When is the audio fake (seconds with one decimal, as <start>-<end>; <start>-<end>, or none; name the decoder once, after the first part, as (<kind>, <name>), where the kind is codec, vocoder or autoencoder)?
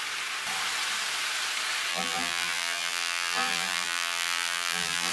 1.9-5.1 (vocoder, BigVGAN v2)